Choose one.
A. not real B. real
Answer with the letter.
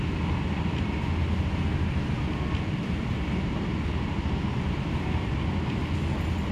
B